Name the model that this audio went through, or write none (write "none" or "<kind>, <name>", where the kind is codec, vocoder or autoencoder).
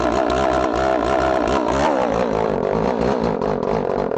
none